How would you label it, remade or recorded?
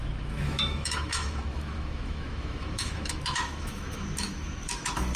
remade